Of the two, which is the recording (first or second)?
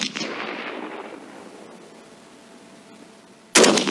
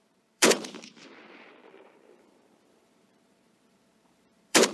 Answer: first